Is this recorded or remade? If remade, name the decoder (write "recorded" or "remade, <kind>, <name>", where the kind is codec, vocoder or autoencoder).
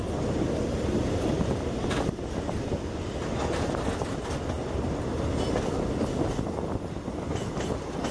recorded